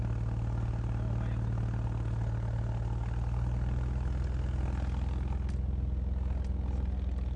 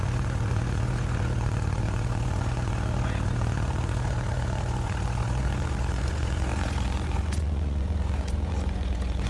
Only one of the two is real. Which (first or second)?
first